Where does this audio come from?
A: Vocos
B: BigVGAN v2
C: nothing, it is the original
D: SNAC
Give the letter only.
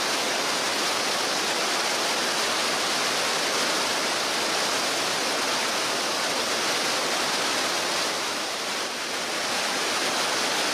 C